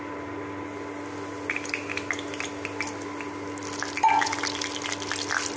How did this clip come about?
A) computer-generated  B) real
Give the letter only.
B